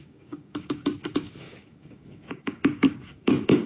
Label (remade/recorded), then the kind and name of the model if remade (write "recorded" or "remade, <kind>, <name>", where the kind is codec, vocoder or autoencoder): remade, codec, DAC